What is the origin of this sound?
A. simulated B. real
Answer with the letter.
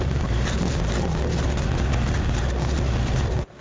B